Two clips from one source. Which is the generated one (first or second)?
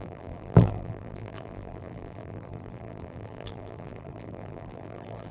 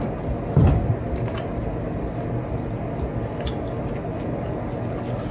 first